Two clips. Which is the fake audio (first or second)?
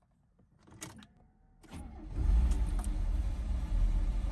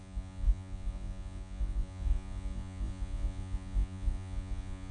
second